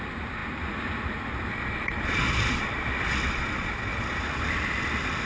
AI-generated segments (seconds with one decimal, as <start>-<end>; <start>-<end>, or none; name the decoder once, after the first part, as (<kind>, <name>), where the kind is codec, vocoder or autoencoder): 1.5-4.2 (vocoder, Vocos)